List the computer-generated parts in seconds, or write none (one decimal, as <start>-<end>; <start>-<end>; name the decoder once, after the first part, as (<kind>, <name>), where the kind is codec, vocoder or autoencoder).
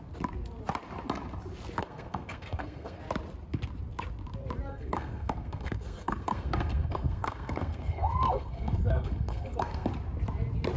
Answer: 1.8-3.0 (codec, SNAC); 4.7-9.9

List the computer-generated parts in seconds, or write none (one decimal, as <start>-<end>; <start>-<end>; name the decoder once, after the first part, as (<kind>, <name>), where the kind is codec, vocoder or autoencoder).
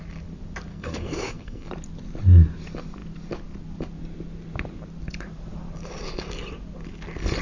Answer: 0.7-1.7 (codec, SNAC)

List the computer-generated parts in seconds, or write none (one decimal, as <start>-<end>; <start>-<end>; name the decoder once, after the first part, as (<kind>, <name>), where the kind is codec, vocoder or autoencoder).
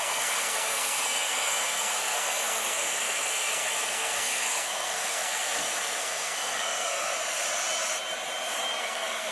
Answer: 0.0-7.1 (codec, SNAC); 8.8-9.3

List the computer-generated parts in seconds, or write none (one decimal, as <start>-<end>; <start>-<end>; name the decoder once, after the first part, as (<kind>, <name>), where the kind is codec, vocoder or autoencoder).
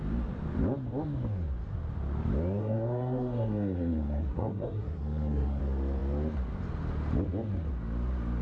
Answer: 2.6-5.6 (codec, SNAC)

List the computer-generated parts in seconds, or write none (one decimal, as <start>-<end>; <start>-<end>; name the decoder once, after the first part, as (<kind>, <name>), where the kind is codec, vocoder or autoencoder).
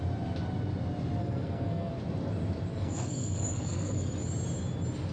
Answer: 1.2-1.9 (codec, SNAC); 2.7-4.1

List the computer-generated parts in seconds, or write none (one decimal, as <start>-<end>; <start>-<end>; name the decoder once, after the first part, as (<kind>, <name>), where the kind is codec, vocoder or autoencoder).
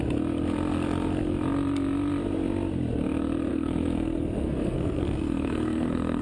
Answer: 3.5-6.2 (codec, SNAC)